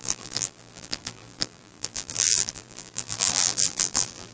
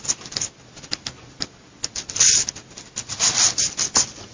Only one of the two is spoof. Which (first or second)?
first